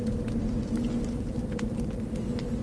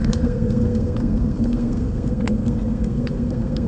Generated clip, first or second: second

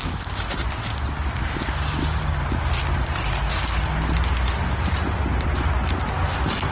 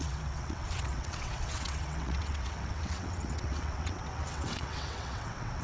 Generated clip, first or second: second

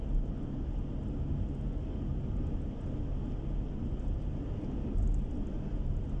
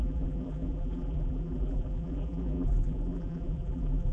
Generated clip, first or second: second